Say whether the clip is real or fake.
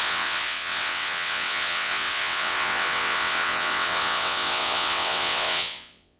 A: fake